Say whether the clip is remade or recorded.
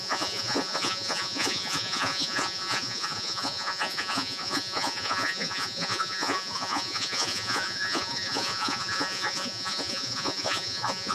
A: remade